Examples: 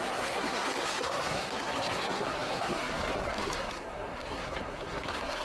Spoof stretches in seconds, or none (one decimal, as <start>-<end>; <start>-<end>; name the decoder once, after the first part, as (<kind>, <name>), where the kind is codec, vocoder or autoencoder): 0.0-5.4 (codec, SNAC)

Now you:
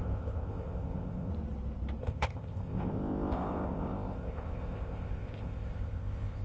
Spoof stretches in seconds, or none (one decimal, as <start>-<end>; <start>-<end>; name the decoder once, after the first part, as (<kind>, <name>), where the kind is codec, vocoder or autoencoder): 0.0-1.3 (codec, ZipCodec); 2.0-6.4

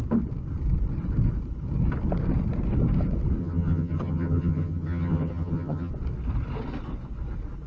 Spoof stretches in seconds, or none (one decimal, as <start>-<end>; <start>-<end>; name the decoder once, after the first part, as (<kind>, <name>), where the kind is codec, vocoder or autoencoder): 3.4-5.9 (vocoder, HiFi-GAN)

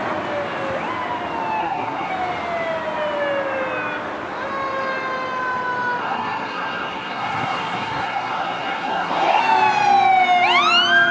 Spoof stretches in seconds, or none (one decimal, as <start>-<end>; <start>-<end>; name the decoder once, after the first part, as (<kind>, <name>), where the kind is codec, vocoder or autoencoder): 1.6-2.1 (codec, SNAC); 6.0-9.4